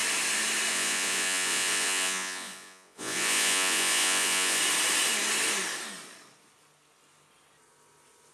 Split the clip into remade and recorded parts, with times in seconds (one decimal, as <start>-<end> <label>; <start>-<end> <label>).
0.0-0.7 recorded; 0.7-4.6 remade; 4.6-8.3 recorded